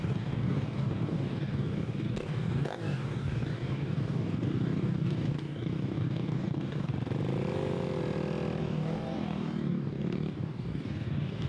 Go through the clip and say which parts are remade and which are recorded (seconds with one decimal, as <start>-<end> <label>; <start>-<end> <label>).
0.0-6.9 remade; 6.9-8.6 recorded; 8.6-11.5 remade